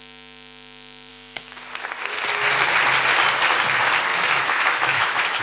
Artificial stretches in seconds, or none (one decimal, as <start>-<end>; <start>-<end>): 1.1-1.6; 4.1-5.4